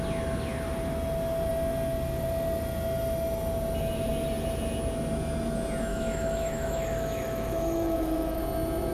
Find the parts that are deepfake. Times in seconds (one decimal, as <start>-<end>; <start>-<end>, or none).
5.9-8.4